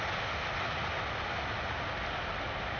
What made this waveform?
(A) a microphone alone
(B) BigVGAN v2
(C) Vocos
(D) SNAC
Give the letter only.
A